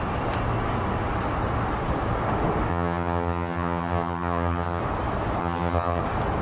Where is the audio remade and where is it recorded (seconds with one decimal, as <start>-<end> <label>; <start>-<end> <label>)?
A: 0.0-2.7 recorded; 2.7-4.8 remade; 4.8-5.4 recorded; 5.4-6.0 remade; 6.0-6.4 recorded